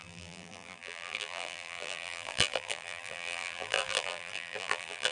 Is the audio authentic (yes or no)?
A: no